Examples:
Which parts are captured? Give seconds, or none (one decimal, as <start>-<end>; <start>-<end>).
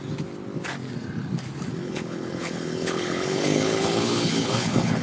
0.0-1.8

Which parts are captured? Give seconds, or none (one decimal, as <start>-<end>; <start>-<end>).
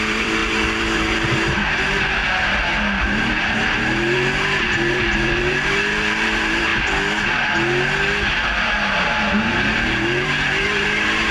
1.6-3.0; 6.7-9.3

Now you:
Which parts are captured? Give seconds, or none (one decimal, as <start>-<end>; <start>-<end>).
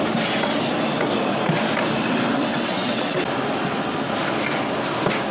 0.0-2.0; 3.2-5.3